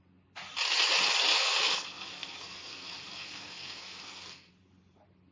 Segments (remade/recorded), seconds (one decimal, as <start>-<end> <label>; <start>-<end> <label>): 0.0-1.3 recorded; 1.3-4.5 remade; 4.5-5.3 recorded